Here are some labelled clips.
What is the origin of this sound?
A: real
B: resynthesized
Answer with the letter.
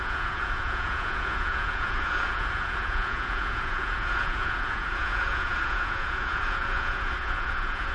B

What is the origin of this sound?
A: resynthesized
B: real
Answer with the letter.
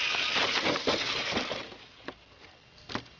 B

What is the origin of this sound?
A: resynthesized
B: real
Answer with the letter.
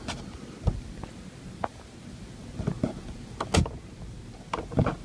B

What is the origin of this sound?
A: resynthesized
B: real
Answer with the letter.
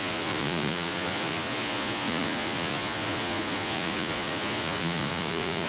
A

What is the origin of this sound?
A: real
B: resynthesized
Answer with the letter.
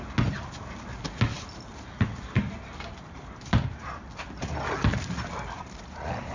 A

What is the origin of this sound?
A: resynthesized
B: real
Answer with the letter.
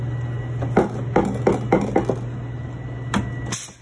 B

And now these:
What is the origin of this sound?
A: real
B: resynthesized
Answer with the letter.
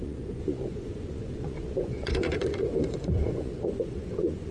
B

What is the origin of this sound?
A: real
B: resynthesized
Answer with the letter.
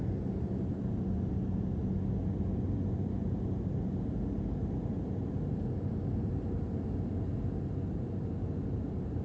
A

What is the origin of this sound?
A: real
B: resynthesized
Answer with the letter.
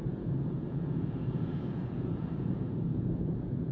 B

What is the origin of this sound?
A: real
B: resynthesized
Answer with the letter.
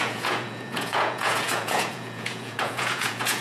B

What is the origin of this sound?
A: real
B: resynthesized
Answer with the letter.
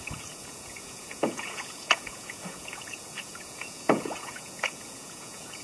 B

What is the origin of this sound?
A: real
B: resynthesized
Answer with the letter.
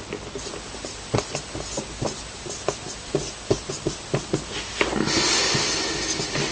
A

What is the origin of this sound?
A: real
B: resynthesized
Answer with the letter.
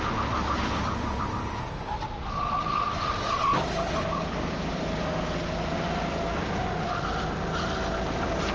A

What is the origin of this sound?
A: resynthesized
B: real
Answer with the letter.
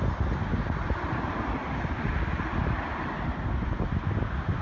B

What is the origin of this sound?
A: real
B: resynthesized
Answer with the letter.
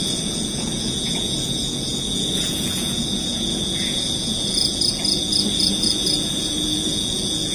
B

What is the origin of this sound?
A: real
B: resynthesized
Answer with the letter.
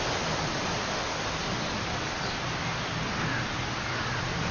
A